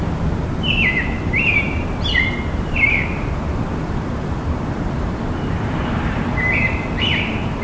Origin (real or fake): fake